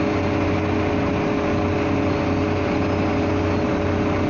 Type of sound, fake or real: real